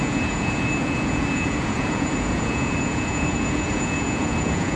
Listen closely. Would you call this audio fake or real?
fake